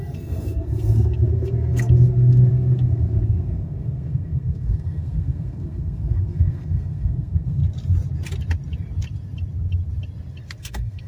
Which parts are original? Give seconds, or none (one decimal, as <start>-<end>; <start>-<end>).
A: 7.6-10.6